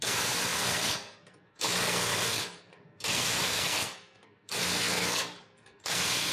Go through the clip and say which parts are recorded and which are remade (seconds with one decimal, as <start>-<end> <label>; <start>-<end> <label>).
0.0-6.3 remade